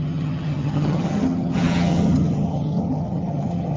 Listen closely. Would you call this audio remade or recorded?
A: remade